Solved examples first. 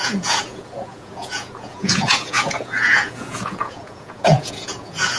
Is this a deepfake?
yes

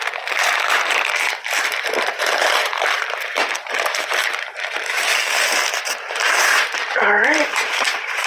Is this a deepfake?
yes